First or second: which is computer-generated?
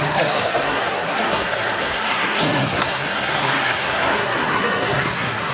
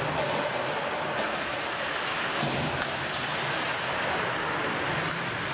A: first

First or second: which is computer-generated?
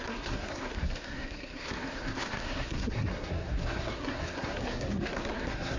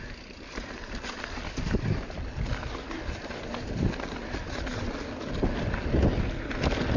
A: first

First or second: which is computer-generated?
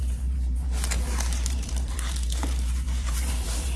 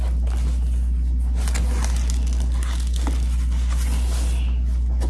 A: first